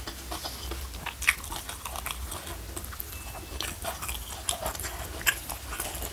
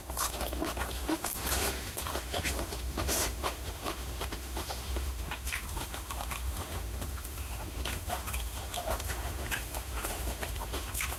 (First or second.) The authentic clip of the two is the first